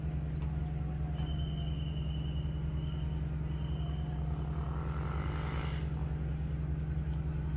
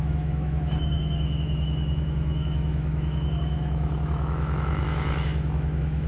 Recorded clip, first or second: first